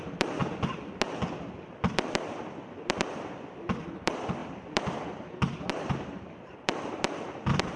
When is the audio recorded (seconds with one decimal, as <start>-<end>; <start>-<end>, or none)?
0.4-1.9